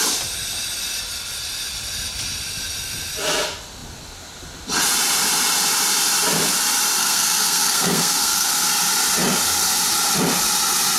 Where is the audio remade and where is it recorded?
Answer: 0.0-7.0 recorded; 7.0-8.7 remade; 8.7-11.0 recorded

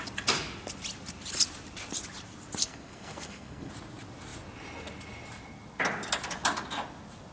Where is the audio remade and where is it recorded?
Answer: 0.0-2.6 recorded; 2.6-3.7 remade; 3.7-7.3 recorded